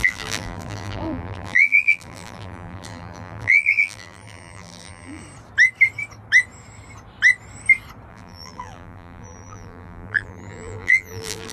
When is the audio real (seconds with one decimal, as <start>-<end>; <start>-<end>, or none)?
5.2-8.1